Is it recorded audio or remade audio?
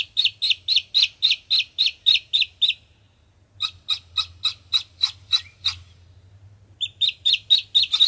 recorded